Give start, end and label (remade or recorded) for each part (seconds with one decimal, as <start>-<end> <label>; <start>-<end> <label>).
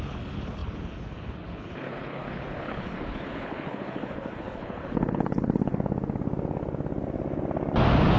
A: 0.0-5.7 remade; 5.7-8.2 recorded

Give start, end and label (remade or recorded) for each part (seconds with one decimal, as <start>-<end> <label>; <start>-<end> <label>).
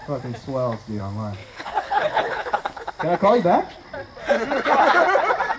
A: 0.0-1.4 recorded; 1.4-2.9 remade; 2.9-5.6 recorded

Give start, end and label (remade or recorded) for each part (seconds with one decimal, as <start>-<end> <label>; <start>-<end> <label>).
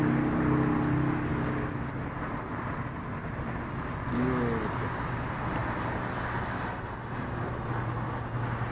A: 0.0-8.7 recorded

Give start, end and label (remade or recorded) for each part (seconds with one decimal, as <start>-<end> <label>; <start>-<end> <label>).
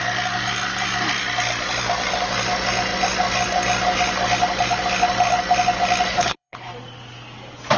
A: 0.0-6.1 recorded; 6.1-6.7 remade; 6.7-7.8 recorded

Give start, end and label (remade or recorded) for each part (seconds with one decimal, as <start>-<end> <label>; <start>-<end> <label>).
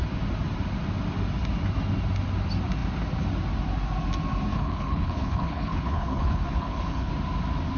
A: 0.0-4.5 recorded; 4.5-7.1 remade; 7.1-7.8 recorded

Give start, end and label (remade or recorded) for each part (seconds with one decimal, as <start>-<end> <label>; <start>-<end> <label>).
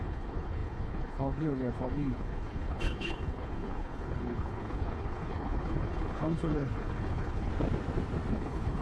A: 0.0-7.5 remade; 7.5-8.3 recorded; 8.3-8.8 remade